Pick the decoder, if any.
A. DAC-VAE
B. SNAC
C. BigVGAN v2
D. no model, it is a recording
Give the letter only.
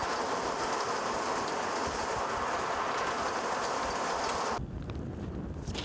D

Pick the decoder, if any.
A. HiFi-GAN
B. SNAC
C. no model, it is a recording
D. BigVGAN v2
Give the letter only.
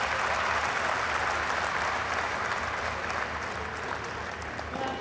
C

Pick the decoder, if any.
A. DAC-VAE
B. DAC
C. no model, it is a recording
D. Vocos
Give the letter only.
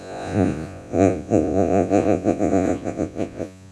D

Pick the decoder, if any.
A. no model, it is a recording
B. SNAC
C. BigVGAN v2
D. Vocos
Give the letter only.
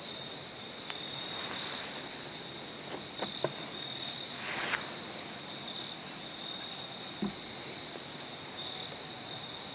A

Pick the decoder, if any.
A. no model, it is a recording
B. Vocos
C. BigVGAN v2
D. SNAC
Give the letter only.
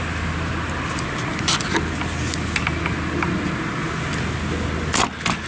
A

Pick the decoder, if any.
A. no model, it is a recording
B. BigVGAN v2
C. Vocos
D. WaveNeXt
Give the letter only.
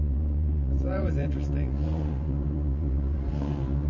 C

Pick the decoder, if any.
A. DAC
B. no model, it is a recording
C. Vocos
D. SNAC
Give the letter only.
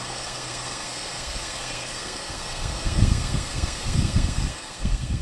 D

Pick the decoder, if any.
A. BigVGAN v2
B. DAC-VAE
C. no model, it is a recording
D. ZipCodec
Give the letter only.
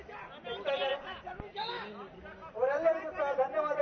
C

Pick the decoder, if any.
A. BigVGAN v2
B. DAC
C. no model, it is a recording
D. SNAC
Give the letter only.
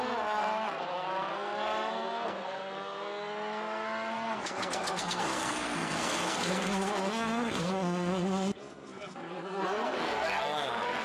D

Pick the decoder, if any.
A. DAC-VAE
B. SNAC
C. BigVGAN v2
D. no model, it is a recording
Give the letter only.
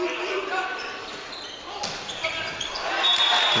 D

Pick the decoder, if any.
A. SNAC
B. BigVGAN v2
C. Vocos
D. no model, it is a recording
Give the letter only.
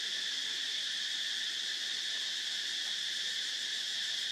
D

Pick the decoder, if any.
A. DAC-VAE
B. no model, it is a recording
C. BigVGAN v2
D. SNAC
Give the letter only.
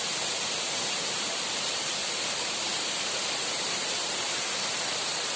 C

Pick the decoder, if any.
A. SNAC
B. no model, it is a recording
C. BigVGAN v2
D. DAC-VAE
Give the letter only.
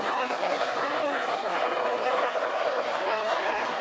A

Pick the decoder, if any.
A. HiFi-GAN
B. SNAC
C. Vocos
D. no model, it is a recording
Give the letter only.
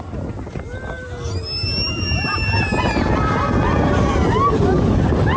D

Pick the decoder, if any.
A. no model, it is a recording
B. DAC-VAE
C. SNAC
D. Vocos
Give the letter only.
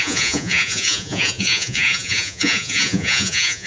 D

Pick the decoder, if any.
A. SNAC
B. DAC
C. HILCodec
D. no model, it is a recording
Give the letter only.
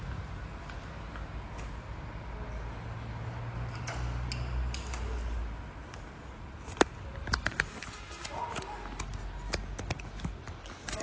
D